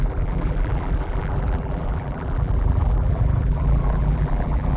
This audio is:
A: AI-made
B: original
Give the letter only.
A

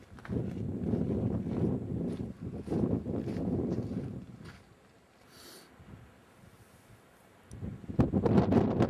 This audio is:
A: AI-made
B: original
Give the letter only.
B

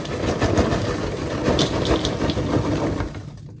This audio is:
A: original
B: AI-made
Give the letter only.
A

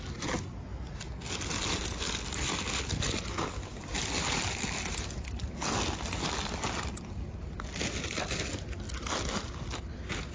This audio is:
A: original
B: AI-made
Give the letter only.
A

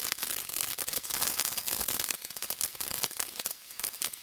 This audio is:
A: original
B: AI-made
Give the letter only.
B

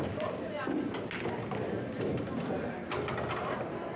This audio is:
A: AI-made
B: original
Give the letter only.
B